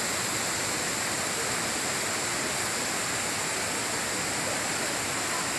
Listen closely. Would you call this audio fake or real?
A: real